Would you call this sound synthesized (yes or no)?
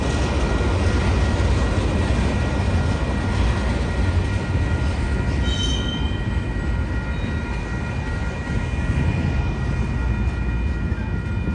no